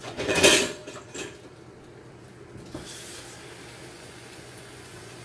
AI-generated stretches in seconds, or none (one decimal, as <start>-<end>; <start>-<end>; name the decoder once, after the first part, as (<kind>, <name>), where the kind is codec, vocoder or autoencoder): 0.0-0.8 (vocoder, Vocos); 3.9-5.2